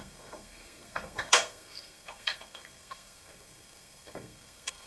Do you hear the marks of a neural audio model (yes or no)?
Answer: yes